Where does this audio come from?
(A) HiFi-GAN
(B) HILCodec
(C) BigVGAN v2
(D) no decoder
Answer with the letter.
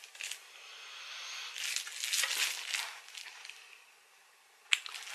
D